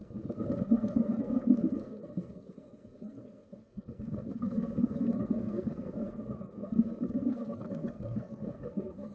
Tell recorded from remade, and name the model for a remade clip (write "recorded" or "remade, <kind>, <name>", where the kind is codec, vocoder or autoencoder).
remade, codec, SNAC